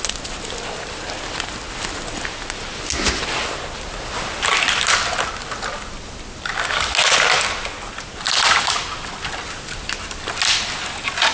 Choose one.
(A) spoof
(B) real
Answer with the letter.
B